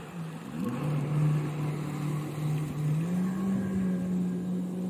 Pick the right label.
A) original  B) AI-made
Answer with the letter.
A